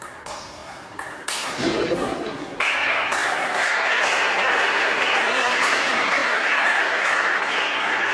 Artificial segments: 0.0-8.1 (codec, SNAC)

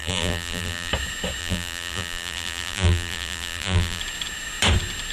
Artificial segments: 0.0-0.9 (vocoder, BigVGAN v2); 1.4-4.0